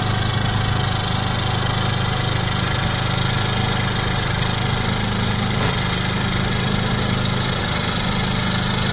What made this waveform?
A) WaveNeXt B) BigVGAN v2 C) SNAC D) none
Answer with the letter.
D